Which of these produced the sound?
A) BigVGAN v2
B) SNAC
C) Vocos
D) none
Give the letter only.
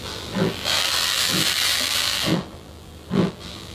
A